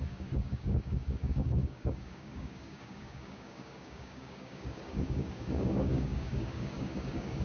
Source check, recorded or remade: remade